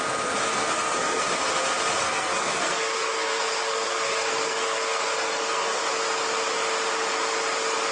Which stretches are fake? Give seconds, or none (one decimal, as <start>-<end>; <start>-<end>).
0.6-1.3; 2.0-5.8

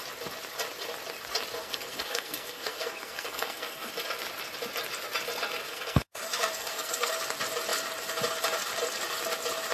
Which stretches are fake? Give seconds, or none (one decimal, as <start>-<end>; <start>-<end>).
1.6-3.9; 5.6-7.1

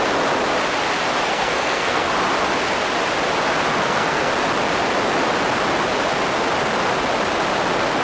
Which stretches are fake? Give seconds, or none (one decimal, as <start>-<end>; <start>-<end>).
1.3-2.1; 3.8-4.3

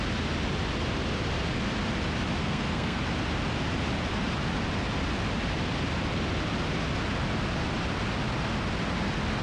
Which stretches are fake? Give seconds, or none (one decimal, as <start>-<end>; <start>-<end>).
2.4-3.0

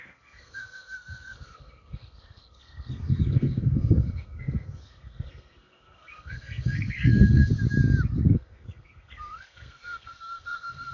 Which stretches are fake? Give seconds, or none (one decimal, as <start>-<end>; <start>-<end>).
0.0-7.5; 8.3-10.9

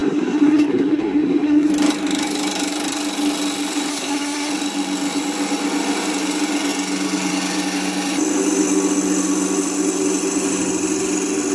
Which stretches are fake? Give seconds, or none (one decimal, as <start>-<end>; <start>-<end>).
0.0-1.7; 3.9-4.5